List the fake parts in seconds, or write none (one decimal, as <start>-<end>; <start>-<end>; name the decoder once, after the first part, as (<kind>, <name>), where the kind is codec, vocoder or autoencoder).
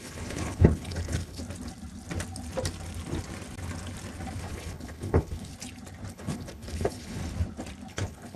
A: 0.0-1.4 (codec, HILCodec); 4.4-5.5; 6.1-7.2; 7.9-8.4